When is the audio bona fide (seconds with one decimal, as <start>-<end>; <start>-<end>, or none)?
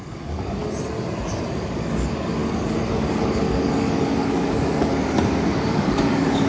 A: 0.6-1.5